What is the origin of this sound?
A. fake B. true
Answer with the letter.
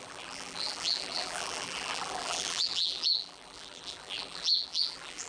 A